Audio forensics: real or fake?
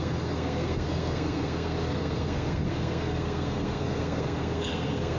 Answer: fake